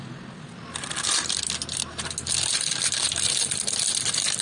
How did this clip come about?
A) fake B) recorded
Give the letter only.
B